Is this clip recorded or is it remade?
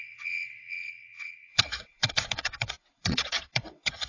remade